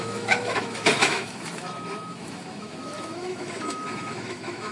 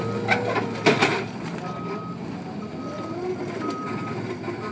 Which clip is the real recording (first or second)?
second